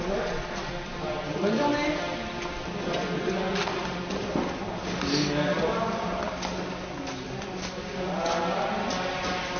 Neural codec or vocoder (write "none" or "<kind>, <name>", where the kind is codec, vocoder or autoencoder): none